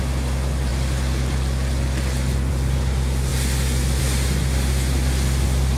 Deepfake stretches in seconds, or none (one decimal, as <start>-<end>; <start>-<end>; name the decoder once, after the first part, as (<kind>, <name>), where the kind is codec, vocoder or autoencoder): none